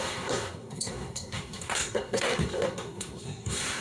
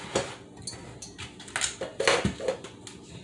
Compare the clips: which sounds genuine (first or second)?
second